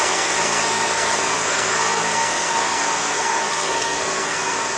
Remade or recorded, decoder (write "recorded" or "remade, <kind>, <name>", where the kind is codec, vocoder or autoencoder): remade, codec, SNAC